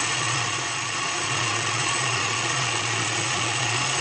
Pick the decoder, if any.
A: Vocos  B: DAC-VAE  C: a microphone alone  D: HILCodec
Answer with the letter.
A